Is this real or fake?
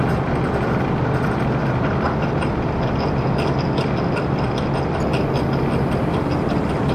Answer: real